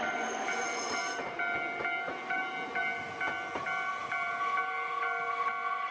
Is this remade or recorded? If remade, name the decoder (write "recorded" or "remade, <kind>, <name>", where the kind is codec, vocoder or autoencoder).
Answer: recorded